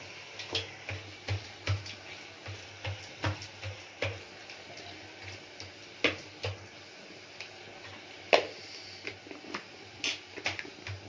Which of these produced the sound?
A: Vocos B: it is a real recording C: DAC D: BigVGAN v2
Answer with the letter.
B